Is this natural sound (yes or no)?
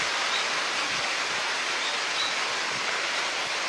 yes